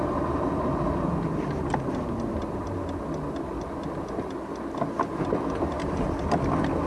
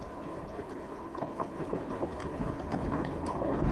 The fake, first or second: second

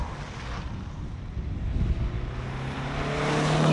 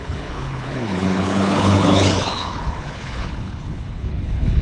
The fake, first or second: second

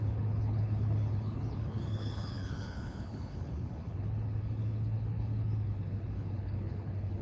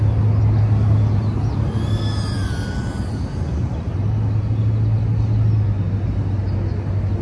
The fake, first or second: first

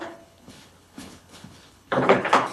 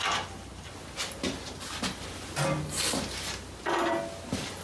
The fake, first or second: first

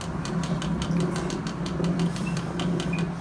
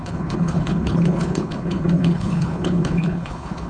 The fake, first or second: second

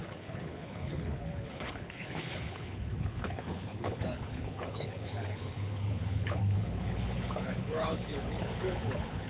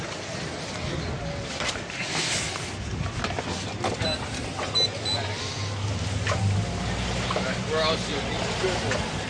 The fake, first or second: first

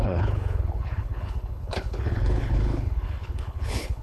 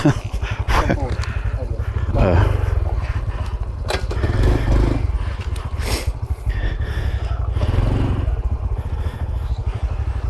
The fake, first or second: first